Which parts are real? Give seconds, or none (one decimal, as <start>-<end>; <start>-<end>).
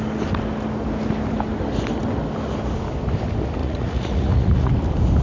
0.0-3.6; 4.7-5.2